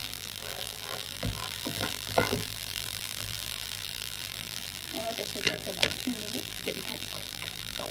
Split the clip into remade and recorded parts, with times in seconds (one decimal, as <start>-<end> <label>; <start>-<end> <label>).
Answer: 0.0-7.9 remade